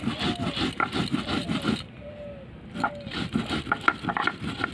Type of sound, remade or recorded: recorded